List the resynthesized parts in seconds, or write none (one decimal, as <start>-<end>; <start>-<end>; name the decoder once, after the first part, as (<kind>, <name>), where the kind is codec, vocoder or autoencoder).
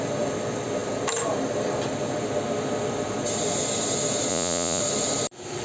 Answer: 4.3-4.8 (vocoder, Vocos)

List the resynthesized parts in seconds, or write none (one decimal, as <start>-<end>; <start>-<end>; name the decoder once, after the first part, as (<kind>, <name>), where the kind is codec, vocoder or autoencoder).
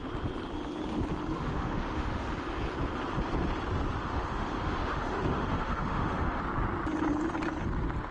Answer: 1.3-2.3 (autoencoder, DAC-VAE); 4.0-6.4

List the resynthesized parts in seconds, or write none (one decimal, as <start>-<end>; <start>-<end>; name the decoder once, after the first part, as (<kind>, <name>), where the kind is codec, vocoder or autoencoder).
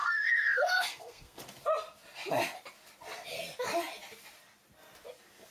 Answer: 0.0-1.4 (codec, SNAC)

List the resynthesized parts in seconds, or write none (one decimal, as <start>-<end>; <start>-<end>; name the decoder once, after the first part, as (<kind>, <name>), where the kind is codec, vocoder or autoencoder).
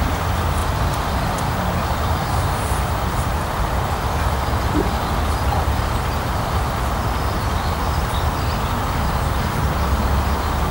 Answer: 0.6-1.5 (vocoder, BigVGAN v2); 3.3-7.8